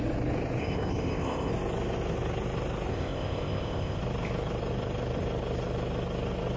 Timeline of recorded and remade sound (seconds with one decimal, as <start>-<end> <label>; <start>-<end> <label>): 0.0-0.6 recorded; 0.6-1.5 remade; 1.5-2.9 recorded; 2.9-4.0 remade; 4.0-6.6 recorded